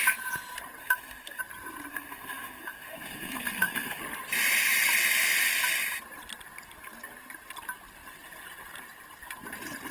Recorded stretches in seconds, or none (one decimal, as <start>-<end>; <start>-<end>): 0.0-0.8; 1.4-1.9; 4.0-9.9